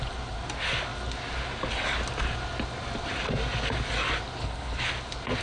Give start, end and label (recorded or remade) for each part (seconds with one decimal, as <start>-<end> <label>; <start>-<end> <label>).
0.0-4.4 recorded; 4.4-4.9 remade; 4.9-5.4 recorded